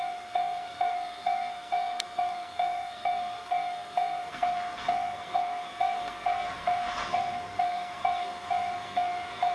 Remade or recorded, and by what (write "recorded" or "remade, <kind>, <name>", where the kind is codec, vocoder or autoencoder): remade, codec, SNAC